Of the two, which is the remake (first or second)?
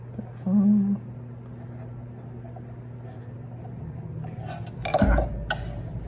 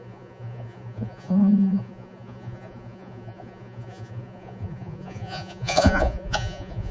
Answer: second